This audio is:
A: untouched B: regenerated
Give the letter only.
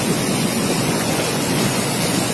B